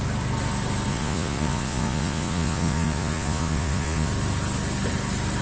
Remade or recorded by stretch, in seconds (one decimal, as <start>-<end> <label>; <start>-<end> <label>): 0.0-0.9 recorded; 0.9-4.1 remade; 4.1-5.4 recorded